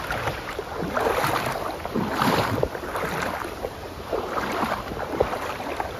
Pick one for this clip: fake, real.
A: fake